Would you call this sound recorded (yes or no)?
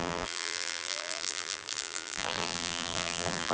no